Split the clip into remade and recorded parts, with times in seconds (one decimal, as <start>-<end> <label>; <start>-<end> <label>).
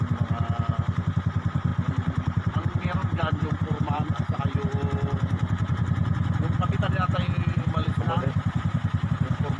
0.0-1.7 recorded; 1.7-4.4 remade; 4.4-7.8 recorded; 7.8-9.1 remade; 9.1-9.6 recorded